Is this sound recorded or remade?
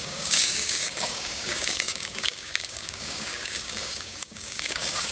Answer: remade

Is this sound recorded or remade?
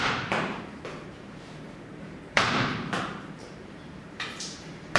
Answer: remade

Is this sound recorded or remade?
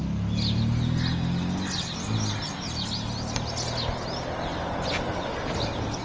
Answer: recorded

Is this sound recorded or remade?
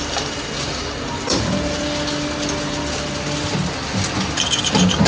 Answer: recorded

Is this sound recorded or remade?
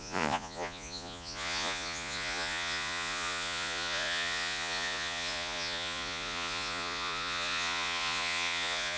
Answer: remade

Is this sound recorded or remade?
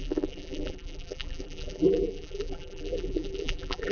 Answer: remade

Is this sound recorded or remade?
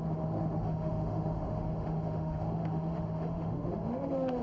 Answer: remade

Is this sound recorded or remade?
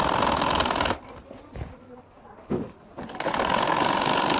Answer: recorded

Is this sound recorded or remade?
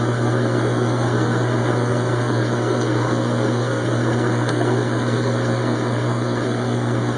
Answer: remade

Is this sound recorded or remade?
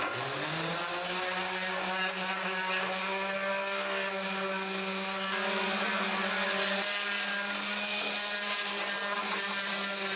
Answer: recorded